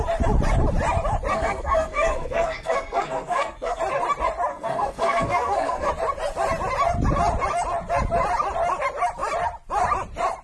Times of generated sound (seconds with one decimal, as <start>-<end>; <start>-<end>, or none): 1.3-3.8; 4.5-5.9